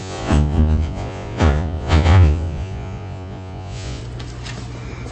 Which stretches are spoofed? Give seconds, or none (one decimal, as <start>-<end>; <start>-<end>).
0.0-4.0